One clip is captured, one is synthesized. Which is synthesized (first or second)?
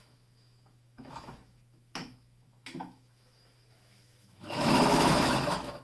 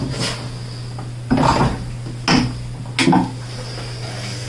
first